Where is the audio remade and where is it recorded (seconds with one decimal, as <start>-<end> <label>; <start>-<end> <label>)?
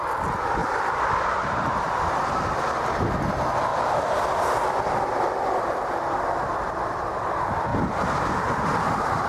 0.0-9.3 recorded